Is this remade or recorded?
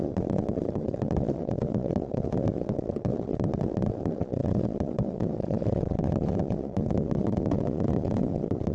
remade